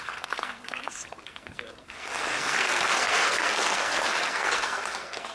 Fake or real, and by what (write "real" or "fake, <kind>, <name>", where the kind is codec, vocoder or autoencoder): fake, codec, SNAC